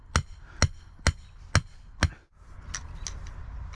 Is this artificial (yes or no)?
no